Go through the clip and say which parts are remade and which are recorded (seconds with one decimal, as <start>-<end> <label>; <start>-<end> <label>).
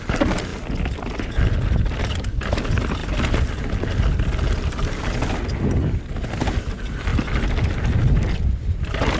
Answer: 0.0-9.2 recorded